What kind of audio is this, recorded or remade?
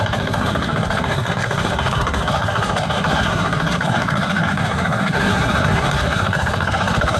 remade